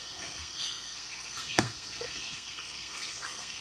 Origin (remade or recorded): remade